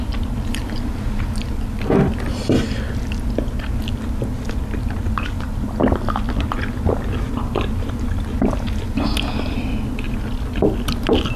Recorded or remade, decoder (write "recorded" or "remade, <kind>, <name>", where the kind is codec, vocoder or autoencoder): recorded